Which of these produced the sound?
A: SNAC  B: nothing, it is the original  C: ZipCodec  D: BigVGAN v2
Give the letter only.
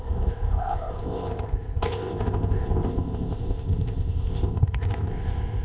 C